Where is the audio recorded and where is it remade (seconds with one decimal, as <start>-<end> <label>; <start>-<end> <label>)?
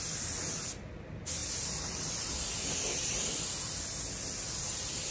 0.0-5.1 recorded